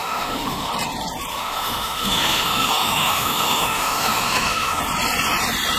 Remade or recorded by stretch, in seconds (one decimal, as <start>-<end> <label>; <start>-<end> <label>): 0.0-0.7 remade; 0.7-1.3 recorded; 1.3-4.8 remade; 4.8-5.8 recorded